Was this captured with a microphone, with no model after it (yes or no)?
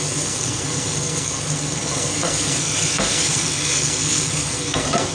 no